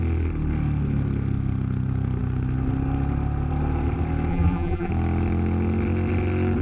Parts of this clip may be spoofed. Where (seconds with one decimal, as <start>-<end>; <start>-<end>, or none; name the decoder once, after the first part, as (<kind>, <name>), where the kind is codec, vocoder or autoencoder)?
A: 4.3-4.9 (vocoder, BigVGAN v2)

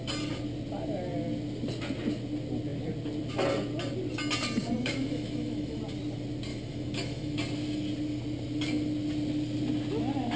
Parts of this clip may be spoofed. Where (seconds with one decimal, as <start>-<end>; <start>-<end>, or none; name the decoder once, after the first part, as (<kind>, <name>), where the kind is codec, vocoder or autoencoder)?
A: 4.8-5.8 (autoencoder, DAC-VAE); 6.5-7.4

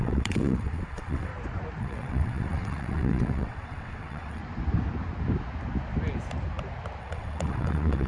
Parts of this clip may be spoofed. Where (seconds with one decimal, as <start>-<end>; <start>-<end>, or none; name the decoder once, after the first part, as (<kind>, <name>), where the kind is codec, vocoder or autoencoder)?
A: 0.0-1.3 (vocoder, WaveNeXt); 1.8-4.4; 7.0-8.1

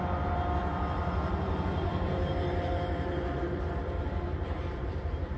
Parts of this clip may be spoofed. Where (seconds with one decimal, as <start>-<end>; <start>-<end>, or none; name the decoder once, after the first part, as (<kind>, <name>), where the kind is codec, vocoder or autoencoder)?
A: 1.9-5.4 (vocoder, BigVGAN v2)

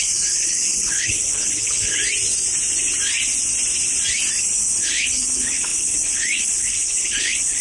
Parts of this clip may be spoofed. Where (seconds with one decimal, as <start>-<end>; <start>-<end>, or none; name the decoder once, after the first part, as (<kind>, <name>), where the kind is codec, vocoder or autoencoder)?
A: 0.0-2.0 (codec, HILCodec); 4.4-7.6

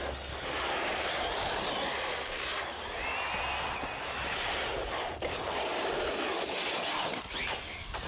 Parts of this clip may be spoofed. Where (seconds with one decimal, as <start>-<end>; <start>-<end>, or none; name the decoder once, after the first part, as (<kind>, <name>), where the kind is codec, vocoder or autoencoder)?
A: none

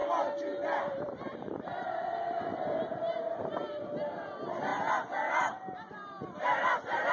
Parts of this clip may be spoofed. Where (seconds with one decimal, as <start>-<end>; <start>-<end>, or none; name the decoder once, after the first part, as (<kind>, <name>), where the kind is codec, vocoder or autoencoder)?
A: 0.8-4.7 (vocoder, BigVGAN v2); 5.9-7.1

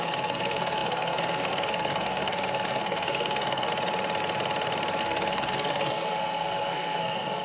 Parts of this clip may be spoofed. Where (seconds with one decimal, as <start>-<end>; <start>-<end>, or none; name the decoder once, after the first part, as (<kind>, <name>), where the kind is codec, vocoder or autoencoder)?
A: 0.0-3.7 (codec, SNAC); 5.0-7.4